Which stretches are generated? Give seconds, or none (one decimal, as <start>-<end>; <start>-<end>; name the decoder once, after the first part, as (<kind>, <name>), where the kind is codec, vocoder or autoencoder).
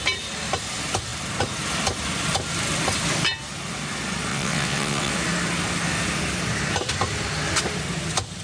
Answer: 4.3-5.1 (vocoder, WaveNeXt)